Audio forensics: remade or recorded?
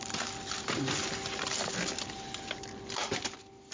recorded